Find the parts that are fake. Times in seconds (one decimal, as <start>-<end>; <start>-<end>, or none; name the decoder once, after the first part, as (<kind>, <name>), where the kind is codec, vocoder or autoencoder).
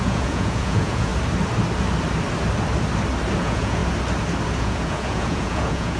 0.0-1.1 (vocoder, Vocos); 3.4-3.8; 4.6-6.0